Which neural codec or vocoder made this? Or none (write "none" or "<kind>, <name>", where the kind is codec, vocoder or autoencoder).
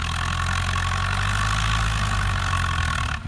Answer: none